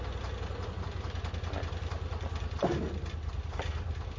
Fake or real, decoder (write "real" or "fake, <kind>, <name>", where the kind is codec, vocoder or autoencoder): real